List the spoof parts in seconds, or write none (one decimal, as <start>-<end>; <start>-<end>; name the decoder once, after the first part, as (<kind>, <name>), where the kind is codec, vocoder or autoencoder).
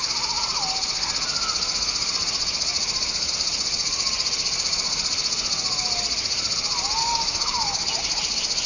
7.0-8.0 (autoencoder, DAC-VAE)